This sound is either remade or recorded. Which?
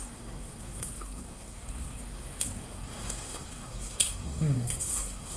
remade